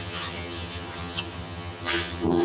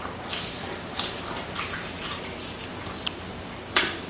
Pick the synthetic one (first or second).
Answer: first